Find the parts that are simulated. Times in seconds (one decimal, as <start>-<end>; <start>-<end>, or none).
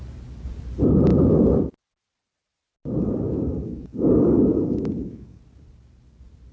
3.0-5.4